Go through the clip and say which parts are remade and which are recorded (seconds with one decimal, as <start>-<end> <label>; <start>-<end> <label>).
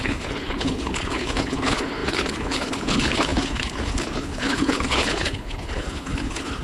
0.0-6.6 remade